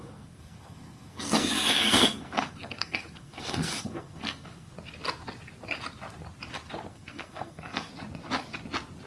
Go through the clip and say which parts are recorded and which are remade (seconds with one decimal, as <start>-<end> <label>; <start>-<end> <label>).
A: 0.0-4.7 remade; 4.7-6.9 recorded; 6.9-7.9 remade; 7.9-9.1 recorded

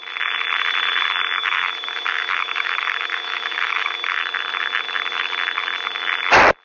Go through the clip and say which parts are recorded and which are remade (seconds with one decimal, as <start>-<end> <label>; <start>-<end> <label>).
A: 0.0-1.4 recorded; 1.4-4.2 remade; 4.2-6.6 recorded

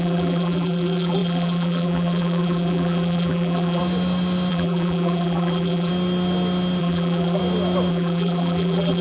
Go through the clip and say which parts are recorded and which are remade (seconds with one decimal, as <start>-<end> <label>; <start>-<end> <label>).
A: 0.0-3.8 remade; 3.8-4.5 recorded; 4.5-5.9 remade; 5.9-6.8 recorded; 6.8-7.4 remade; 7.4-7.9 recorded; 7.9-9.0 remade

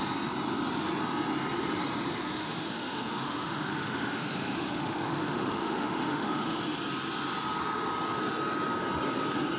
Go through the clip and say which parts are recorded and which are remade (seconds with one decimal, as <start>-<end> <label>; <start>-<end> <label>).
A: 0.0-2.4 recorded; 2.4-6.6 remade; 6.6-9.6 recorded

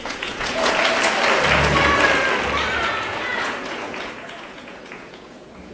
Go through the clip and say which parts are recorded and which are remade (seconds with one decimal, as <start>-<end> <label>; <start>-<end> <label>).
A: 0.0-0.8 remade; 0.8-2.8 recorded; 2.8-5.7 remade

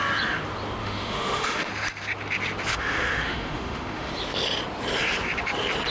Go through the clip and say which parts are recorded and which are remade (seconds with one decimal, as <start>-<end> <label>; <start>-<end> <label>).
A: 0.0-0.8 recorded; 0.8-1.7 remade; 1.7-2.7 recorded; 2.7-4.1 remade; 4.1-5.9 recorded